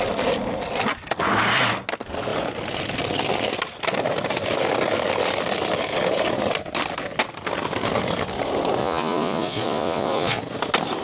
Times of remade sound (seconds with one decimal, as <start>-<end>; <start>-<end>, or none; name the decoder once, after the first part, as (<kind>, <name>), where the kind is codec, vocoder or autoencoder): 8.8-10.4 (vocoder, Vocos)